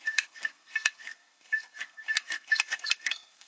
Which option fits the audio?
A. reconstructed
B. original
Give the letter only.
A